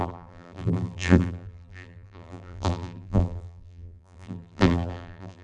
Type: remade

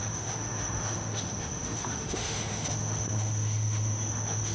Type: remade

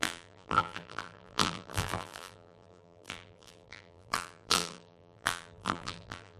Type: remade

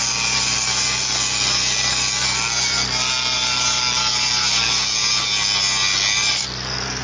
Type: recorded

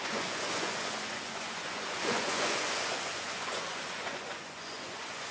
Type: remade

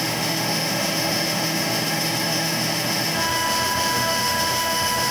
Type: remade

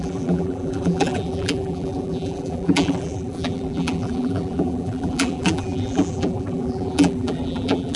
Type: remade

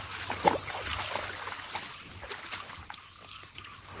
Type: recorded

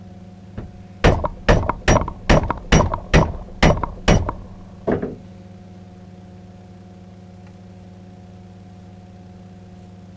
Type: recorded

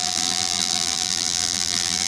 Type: remade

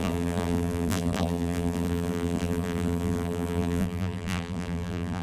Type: remade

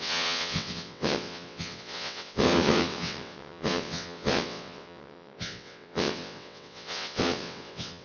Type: remade